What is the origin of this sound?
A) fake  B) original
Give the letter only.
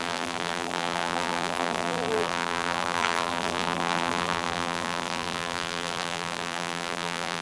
A